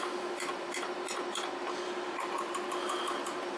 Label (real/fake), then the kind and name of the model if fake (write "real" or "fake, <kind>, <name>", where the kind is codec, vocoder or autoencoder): real